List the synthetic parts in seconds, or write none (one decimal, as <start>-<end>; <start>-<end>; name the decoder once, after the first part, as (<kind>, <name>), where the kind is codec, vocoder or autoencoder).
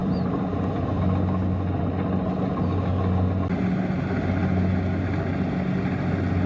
0.0-1.8 (vocoder, BigVGAN v2)